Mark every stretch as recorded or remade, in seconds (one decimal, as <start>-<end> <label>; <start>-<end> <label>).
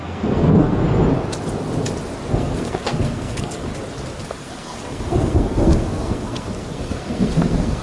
0.0-0.8 remade; 0.8-2.3 recorded; 2.3-3.7 remade; 3.7-4.2 recorded; 4.2-7.8 remade